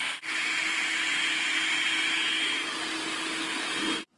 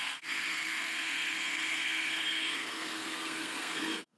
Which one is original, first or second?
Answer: first